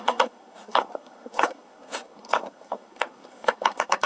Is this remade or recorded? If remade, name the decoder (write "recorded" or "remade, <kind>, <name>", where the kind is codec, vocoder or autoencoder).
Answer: remade, codec, SNAC